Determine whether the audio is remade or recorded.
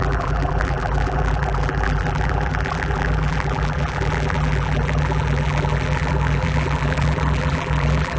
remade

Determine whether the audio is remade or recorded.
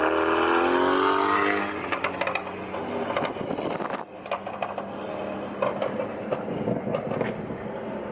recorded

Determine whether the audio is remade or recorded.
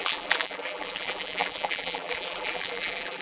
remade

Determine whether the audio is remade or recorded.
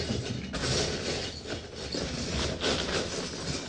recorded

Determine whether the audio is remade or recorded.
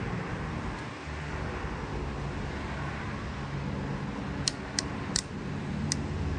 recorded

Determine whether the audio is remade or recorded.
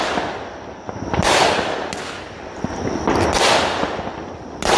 recorded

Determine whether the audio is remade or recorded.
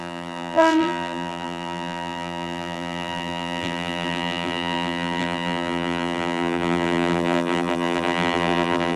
remade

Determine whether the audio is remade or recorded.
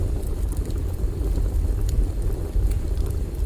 remade